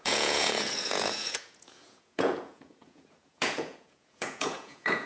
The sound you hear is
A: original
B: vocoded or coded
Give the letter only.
B